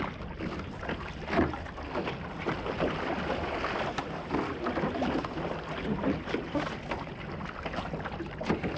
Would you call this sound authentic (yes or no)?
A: yes